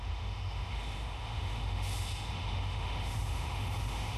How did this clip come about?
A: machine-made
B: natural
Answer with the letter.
A